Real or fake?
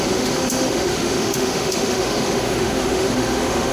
fake